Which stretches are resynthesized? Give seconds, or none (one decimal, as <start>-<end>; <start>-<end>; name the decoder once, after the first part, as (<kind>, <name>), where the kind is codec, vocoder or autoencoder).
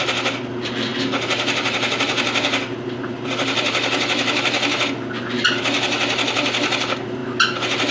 none